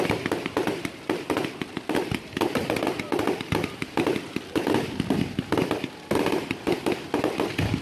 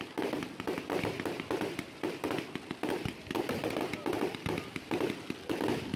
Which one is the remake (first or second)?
first